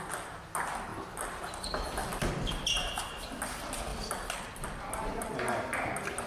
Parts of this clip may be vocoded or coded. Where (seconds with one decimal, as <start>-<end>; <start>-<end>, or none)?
2.0-2.6; 3.9-6.3